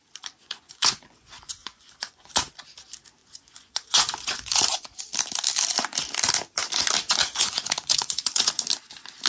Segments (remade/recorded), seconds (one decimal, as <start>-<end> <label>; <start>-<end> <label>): 0.0-0.4 recorded; 0.4-2.3 remade; 2.3-3.2 recorded; 3.2-5.0 remade; 5.0-7.2 recorded; 7.2-8.5 remade; 8.5-9.3 recorded